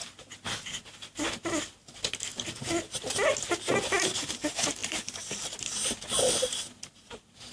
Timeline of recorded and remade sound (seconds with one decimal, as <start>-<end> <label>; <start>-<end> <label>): 0.0-7.5 recorded